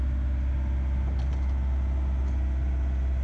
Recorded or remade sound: recorded